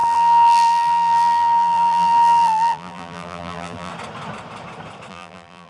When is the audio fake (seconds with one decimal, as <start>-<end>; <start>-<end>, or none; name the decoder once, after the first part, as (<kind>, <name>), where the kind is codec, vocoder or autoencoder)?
0.0-3.9 (vocoder, BigVGAN v2); 5.1-5.7